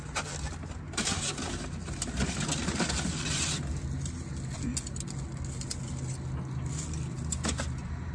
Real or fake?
real